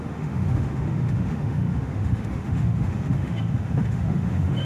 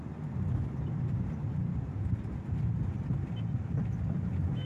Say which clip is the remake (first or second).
first